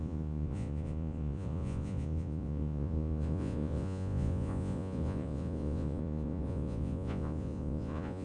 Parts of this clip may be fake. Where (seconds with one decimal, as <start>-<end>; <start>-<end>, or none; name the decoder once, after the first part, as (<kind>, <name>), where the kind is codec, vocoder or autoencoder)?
0.0-8.2 (vocoder, Vocos)